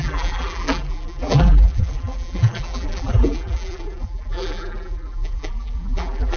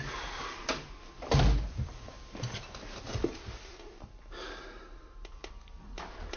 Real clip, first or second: second